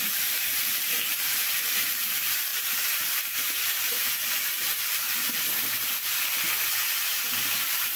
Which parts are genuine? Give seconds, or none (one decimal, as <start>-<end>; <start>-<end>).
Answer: 6.4-7.1